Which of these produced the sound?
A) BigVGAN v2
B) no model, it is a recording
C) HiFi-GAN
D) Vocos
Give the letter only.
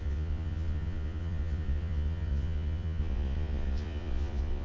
D